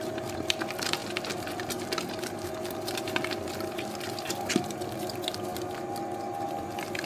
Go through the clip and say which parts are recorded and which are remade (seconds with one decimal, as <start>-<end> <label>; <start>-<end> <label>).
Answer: 0.0-7.1 recorded